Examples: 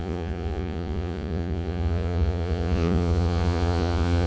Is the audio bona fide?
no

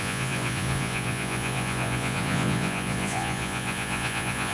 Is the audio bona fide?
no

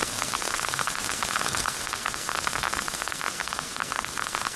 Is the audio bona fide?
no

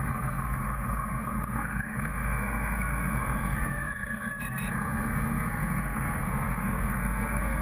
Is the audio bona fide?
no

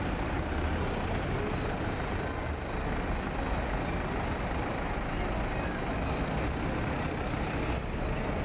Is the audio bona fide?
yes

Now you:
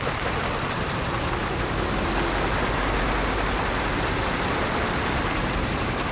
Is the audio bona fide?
yes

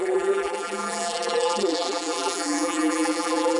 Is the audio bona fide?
no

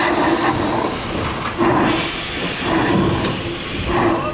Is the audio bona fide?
yes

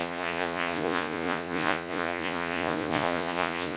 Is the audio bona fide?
no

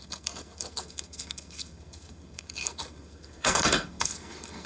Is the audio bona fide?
no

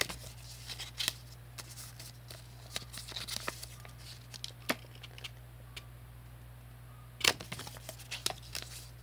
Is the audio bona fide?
yes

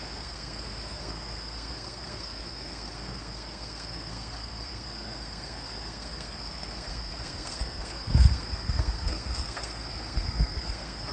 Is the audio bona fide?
no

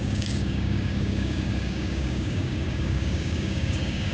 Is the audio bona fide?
no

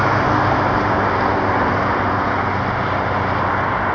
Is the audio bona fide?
yes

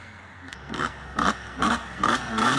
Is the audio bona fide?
no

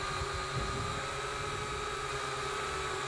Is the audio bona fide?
yes